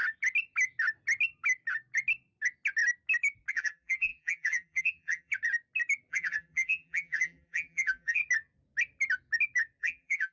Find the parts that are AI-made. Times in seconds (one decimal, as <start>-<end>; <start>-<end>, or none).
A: 3.5-5.3; 6.1-8.2; 9.8-10.3